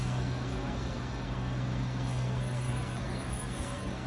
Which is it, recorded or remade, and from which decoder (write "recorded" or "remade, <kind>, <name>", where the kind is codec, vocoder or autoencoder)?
remade, codec, SNAC